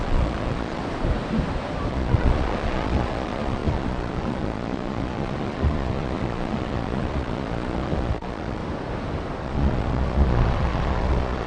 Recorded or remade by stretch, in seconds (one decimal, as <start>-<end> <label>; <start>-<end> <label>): 0.0-0.8 remade; 0.8-1.9 recorded; 1.9-8.6 remade; 8.6-9.4 recorded; 9.4-11.5 remade